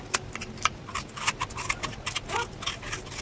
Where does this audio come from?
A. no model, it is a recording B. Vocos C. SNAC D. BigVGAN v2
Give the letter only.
A